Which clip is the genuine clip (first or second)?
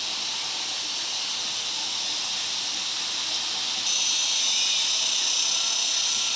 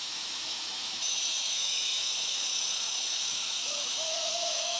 first